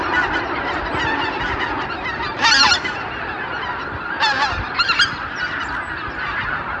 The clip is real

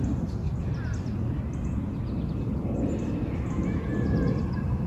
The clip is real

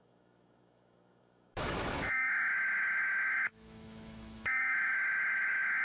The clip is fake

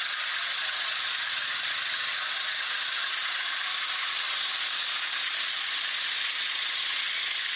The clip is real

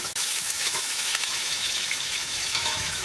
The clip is fake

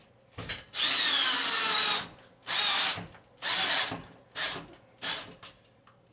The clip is real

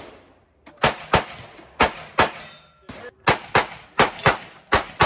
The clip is real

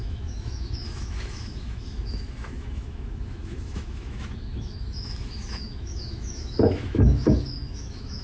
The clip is fake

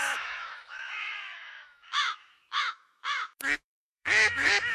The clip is fake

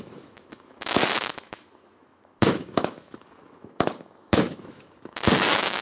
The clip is fake